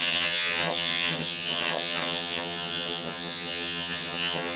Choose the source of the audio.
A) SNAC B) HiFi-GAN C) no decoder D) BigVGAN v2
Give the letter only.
B